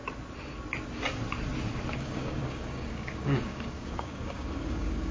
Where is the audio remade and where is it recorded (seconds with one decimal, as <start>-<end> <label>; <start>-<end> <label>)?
0.0-1.9 recorded; 1.9-5.1 remade